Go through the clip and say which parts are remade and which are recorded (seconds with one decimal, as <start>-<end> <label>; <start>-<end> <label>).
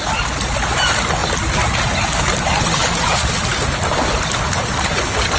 0.0-5.4 recorded